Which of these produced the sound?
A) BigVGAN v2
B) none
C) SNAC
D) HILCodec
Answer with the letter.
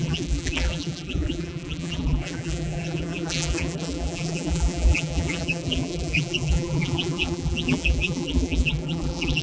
A